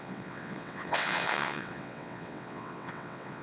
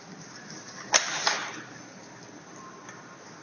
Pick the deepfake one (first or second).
first